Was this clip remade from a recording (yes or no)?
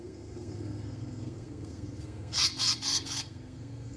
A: yes